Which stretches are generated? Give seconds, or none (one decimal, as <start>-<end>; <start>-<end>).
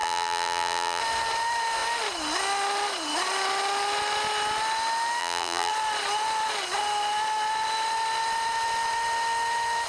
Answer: 0.0-1.0; 5.2-5.7